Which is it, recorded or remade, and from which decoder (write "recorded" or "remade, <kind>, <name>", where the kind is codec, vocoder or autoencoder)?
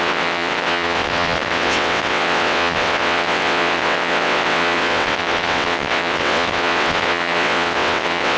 remade, vocoder, WaveNeXt